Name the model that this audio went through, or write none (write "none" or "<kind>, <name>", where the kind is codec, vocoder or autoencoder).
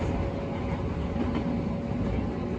none